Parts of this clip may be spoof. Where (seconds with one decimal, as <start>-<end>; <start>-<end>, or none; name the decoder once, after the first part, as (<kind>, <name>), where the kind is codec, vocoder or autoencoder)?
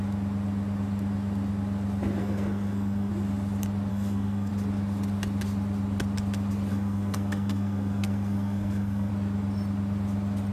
2.2-3.1 (codec, SNAC); 3.9-4.5; 6.7-9.1